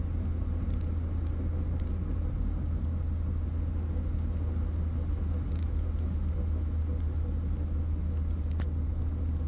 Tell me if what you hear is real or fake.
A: real